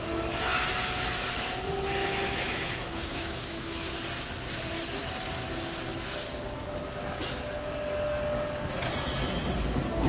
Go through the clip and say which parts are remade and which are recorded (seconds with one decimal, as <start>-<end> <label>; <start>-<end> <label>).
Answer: 0.0-2.0 recorded; 2.0-3.9 remade; 3.9-10.1 recorded

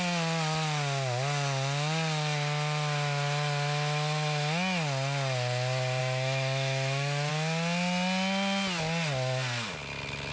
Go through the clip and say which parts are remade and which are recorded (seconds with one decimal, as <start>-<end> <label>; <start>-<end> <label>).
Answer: 0.0-6.0 recorded; 6.0-7.3 remade; 7.3-10.3 recorded

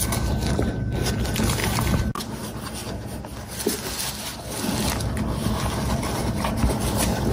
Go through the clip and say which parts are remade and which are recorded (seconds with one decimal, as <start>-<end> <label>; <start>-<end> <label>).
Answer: 0.0-7.3 recorded

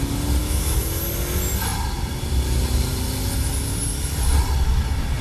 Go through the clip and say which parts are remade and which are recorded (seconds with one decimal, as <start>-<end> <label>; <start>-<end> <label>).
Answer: 0.0-0.4 recorded; 0.4-1.0 remade; 1.0-5.2 recorded